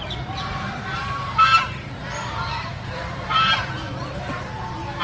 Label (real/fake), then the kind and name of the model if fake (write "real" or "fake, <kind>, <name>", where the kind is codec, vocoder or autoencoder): fake, vocoder, BigVGAN v2